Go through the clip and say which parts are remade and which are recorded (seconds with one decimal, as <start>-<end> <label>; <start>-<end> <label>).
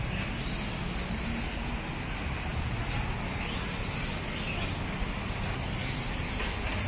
0.0-6.9 recorded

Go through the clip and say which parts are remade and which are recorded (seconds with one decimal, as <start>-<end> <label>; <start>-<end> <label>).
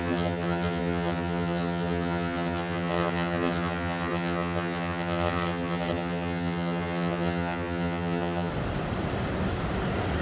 0.0-8.5 remade; 8.5-10.2 recorded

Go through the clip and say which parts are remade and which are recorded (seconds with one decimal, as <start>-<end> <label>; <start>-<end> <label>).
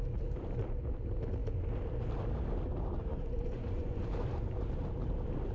0.0-3.1 recorded; 3.1-4.0 remade; 4.0-5.5 recorded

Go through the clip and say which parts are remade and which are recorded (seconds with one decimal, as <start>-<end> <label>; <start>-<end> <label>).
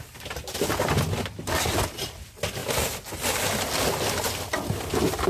0.0-5.3 recorded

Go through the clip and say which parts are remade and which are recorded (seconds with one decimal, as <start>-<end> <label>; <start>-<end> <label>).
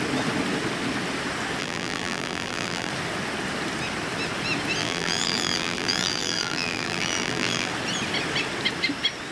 0.0-1.6 recorded; 1.6-2.9 remade; 2.9-4.8 recorded; 4.8-7.7 remade; 7.7-9.3 recorded